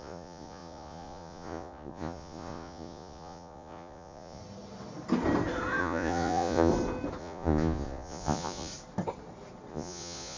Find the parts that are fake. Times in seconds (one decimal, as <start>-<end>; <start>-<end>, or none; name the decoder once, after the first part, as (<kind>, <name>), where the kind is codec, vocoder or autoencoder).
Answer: 0.0-4.4 (vocoder, Vocos); 5.8-6.7; 7.2-8.7; 9.7-10.4